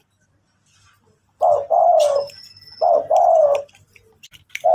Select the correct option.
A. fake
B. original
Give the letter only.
B